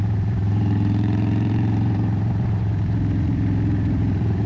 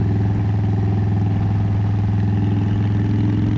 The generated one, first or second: first